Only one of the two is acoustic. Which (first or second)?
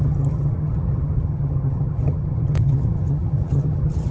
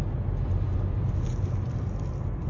second